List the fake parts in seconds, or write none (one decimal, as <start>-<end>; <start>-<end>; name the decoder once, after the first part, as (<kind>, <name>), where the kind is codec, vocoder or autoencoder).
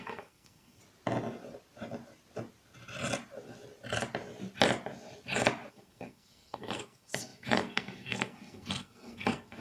0.0-0.8 (codec, SNAC); 5.7-9.6